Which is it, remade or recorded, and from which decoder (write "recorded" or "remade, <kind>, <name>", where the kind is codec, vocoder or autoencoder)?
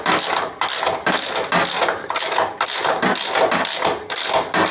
recorded